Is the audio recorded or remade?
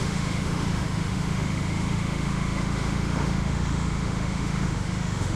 remade